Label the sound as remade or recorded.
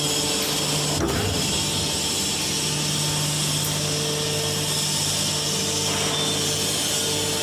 recorded